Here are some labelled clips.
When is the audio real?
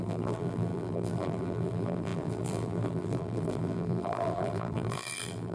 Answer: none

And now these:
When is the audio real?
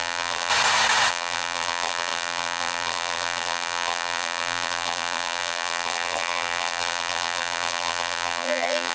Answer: 0.5-1.1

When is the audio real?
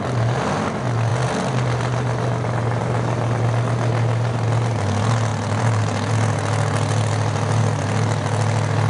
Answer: 0.0-5.3; 6.1-8.9